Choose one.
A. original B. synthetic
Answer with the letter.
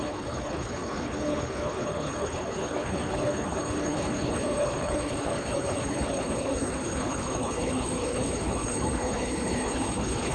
B